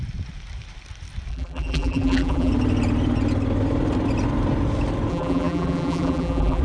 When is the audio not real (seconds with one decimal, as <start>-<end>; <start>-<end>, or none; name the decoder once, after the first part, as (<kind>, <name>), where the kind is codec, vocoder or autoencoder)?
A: 1.3-2.5 (vocoder, BigVGAN v2); 5.1-6.6